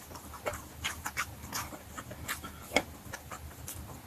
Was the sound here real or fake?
real